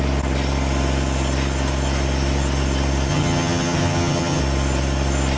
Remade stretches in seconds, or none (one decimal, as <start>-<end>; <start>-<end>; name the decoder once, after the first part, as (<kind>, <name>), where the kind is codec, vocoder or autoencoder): 3.1-4.4 (vocoder, HiFi-GAN)